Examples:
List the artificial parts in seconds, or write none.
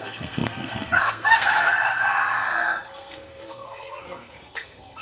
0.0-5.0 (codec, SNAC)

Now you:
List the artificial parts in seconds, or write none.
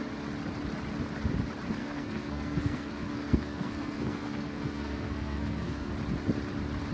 1.8-5.9 (codec, SNAC)